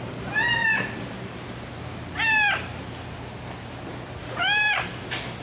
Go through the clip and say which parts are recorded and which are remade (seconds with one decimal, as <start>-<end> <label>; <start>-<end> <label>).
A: 0.0-0.6 recorded; 0.6-1.7 remade; 1.7-4.2 recorded; 4.2-4.9 remade; 4.9-5.4 recorded